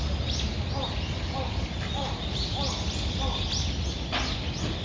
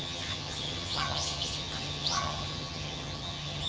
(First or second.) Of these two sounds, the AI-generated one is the second